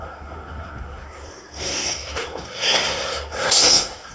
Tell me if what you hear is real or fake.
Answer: fake